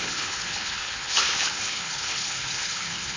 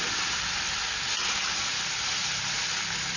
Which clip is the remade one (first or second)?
first